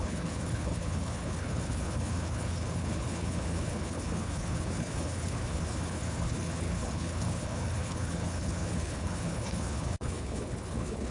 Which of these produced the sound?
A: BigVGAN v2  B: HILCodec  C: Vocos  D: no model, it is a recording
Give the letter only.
B